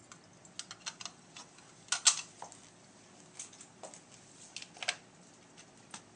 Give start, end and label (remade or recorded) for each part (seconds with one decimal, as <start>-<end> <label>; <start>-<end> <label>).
0.0-6.2 recorded